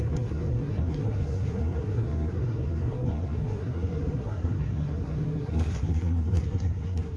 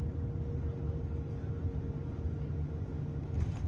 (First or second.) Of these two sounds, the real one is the second